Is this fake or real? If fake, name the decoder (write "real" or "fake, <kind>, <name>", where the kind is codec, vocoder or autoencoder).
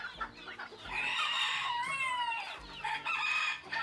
real